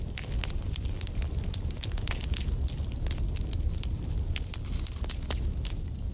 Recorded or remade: recorded